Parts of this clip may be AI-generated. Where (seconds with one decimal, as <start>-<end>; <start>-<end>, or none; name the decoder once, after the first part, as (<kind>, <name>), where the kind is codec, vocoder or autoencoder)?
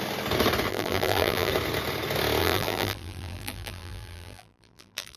0.7-1.5 (vocoder, BigVGAN v2); 2.4-5.2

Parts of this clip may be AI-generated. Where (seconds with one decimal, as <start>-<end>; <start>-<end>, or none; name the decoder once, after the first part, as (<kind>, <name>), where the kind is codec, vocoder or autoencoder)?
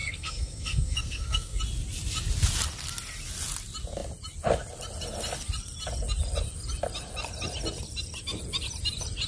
0.0-1.6 (codec, SNAC)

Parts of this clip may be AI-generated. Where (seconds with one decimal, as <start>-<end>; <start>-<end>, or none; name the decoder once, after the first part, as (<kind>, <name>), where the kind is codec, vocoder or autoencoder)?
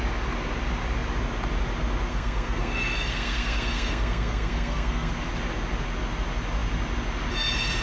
2.1-5.1 (codec, SNAC)